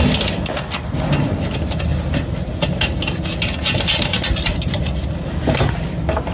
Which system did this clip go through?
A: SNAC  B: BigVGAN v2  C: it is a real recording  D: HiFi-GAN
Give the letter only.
C